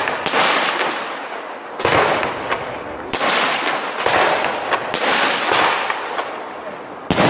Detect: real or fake real